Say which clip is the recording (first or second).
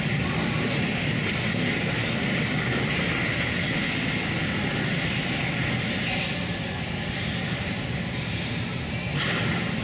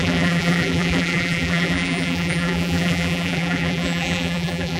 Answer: first